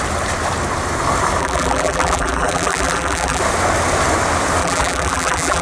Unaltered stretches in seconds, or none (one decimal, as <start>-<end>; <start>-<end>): 0.0-1.4; 3.4-4.6